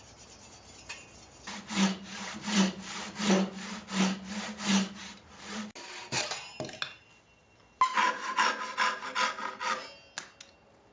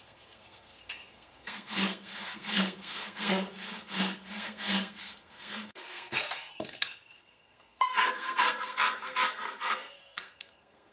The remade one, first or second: second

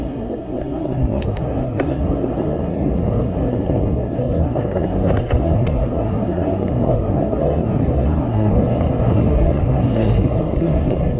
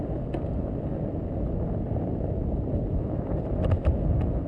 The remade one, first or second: first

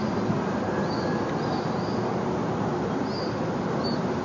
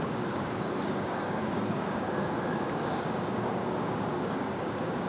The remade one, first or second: second